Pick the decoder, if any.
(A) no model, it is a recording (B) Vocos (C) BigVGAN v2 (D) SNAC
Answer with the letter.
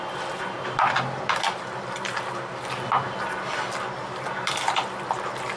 C